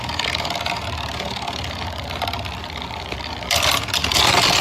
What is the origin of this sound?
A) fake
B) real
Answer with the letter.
B